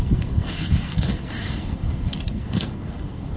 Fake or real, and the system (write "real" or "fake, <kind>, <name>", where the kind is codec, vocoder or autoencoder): fake, codec, SNAC